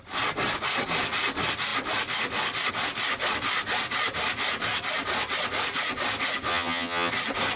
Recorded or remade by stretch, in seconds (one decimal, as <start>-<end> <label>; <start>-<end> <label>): 0.0-6.5 recorded; 6.5-7.1 remade; 7.1-7.6 recorded